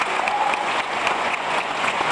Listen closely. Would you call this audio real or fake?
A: fake